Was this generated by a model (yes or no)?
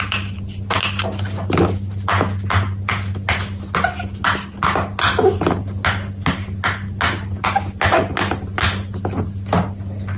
no